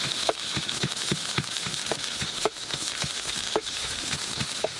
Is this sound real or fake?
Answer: fake